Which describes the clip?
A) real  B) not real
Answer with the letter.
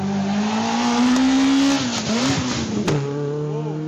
A